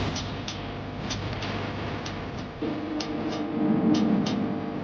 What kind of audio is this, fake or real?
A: real